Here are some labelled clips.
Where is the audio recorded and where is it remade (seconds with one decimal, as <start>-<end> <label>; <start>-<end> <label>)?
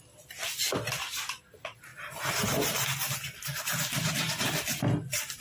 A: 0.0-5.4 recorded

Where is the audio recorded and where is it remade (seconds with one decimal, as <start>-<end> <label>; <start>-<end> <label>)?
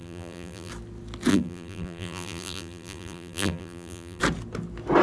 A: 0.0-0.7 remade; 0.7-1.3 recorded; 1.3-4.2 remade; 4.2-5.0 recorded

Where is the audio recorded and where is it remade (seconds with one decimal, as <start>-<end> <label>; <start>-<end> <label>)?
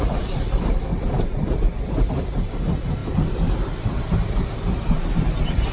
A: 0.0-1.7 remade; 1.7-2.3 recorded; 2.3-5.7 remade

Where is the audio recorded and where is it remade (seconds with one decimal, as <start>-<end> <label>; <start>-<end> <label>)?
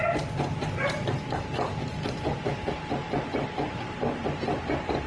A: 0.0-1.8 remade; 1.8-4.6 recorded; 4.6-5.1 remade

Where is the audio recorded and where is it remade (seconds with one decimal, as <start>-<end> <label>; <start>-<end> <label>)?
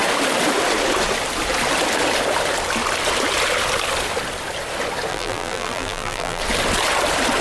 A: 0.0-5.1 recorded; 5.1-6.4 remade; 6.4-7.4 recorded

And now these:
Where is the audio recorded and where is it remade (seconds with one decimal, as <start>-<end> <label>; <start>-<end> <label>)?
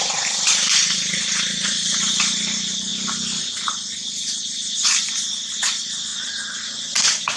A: 0.0-2.9 remade; 2.9-4.4 recorded; 4.4-6.1 remade; 6.1-6.8 recorded; 6.8-7.4 remade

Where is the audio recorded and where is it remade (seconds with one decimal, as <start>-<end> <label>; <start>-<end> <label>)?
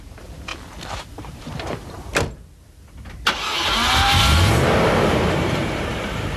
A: 0.0-0.5 remade; 0.5-1.2 recorded; 1.2-2.1 remade; 2.1-5.0 recorded; 5.0-6.4 remade